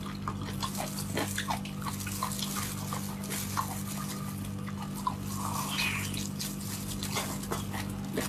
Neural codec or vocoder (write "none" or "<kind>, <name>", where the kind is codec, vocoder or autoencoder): none